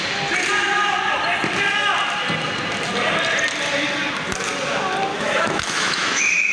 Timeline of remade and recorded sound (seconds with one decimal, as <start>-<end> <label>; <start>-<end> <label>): 0.0-5.1 recorded; 5.1-6.5 remade